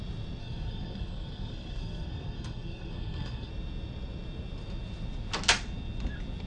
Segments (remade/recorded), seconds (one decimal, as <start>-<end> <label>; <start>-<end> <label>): 0.0-0.4 recorded; 0.4-3.5 remade; 3.5-6.5 recorded

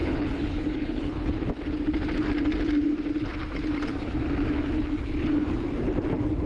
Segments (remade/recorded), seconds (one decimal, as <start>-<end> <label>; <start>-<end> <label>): 0.0-1.5 remade; 1.5-6.5 recorded

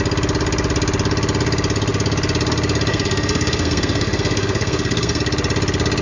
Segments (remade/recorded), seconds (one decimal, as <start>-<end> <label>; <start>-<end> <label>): 0.0-2.9 recorded; 2.9-5.2 remade; 5.2-6.0 recorded

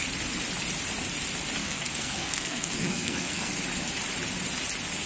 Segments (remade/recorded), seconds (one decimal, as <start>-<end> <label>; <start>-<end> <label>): 0.0-1.6 recorded; 1.6-3.5 remade; 3.5-5.1 recorded

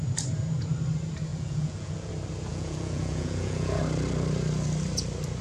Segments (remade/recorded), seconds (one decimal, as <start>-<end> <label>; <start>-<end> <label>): 0.0-1.3 recorded; 1.3-2.1 remade; 2.1-2.5 recorded; 2.5-3.8 remade; 3.8-5.4 recorded

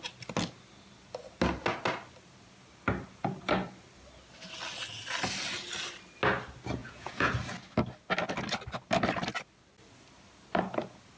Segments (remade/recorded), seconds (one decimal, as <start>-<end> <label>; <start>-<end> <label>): 0.0-6.8 recorded; 6.8-7.3 remade; 7.3-11.2 recorded

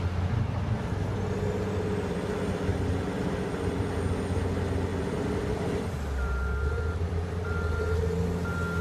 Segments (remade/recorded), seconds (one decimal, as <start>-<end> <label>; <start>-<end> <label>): 0.0-2.7 recorded; 2.7-4.4 remade; 4.4-4.9 recorded; 4.9-7.5 remade; 7.5-8.8 recorded

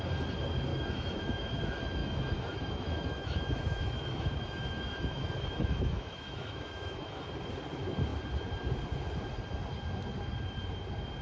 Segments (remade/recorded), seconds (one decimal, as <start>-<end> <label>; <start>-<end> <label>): 0.0-0.7 recorded; 0.7-1.6 remade; 1.6-2.0 recorded; 2.0-7.2 remade; 7.2-11.2 recorded